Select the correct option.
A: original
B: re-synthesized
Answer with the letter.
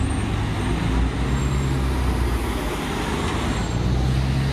A